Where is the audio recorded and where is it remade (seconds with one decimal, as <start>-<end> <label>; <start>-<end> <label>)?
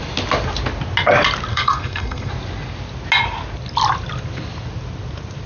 0.0-1.5 recorded; 1.5-2.3 remade; 2.3-5.5 recorded